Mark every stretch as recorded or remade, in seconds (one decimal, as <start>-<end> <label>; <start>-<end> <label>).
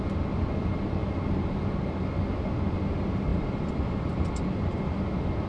0.0-3.3 recorded; 3.3-4.7 remade; 4.7-5.5 recorded